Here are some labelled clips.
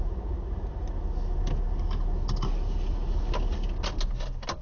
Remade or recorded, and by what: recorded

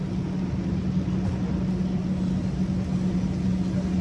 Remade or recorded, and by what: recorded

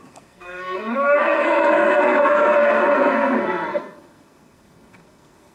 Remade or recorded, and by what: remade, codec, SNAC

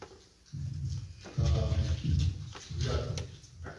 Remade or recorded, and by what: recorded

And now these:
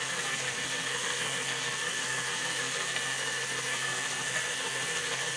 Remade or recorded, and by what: remade, codec, SNAC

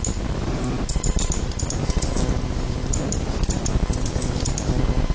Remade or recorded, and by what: recorded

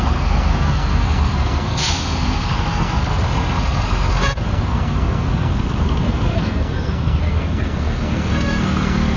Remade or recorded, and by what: remade, codec, SNAC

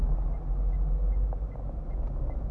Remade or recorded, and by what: recorded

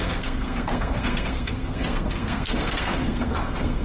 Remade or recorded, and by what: remade, codec, SNAC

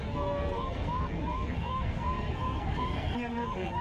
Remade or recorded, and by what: remade, codec, SNAC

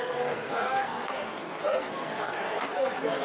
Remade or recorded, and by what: remade, codec, SNAC